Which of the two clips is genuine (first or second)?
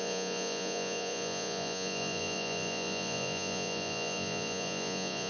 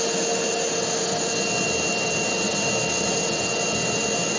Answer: second